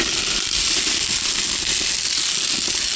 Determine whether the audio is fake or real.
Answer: real